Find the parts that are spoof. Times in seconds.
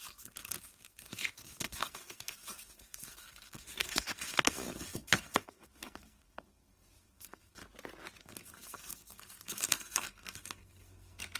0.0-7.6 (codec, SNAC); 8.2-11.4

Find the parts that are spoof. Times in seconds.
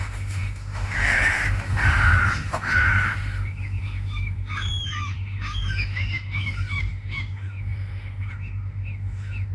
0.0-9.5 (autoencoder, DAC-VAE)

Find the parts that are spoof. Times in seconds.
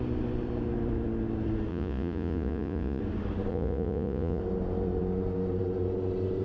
1.7-3.0 (vocoder, Vocos); 3.5-4.4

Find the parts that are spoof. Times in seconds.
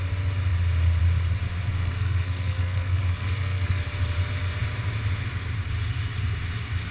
1.7-3.8 (codec, SNAC)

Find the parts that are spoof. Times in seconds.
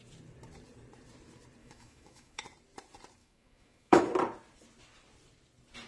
1.6-2.4 (autoencoder, DAC-VAE); 3.2-4.0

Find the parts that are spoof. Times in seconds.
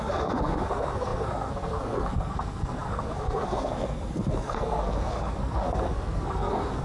0.0-6.8 (codec, SNAC)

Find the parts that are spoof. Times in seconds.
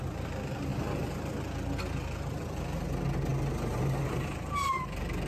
none